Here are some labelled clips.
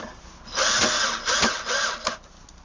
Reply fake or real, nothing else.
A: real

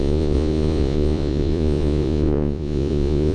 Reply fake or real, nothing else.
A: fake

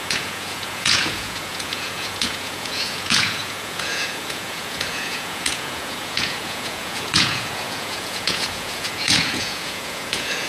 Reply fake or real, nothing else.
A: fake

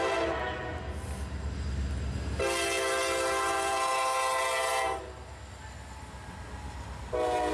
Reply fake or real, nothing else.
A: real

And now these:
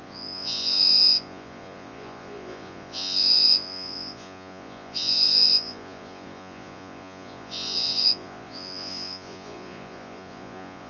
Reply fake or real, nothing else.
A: fake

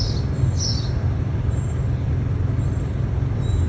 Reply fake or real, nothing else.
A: real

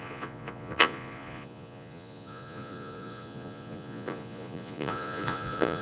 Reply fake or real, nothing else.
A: fake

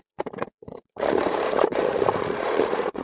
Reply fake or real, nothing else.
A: fake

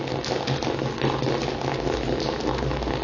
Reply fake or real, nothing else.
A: real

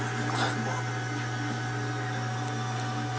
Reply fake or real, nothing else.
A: real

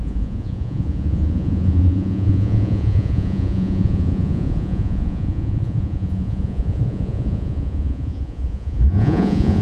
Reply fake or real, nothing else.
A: fake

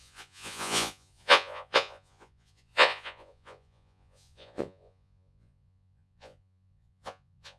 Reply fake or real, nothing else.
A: fake